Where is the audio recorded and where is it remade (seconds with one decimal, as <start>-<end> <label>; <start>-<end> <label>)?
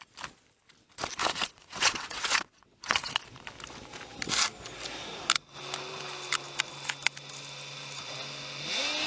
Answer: 0.0-1.2 recorded; 1.2-3.2 remade; 3.2-9.1 recorded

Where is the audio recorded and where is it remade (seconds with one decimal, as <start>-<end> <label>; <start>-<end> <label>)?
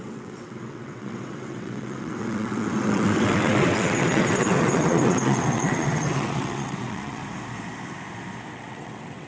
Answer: 0.0-7.2 remade; 7.2-8.5 recorded; 8.5-9.3 remade